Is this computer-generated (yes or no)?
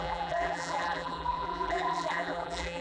yes